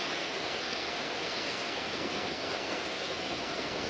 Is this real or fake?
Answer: fake